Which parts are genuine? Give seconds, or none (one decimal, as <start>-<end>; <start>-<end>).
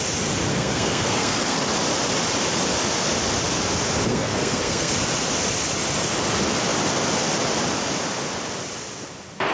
0.0-0.5; 1.6-4.1; 4.9-9.5